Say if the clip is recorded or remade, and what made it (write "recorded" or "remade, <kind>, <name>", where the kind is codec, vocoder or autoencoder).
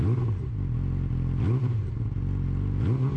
recorded